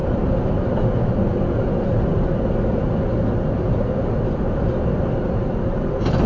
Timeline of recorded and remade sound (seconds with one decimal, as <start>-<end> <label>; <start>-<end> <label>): 0.0-0.5 remade; 0.5-6.3 recorded